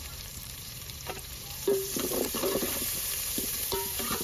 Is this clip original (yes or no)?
no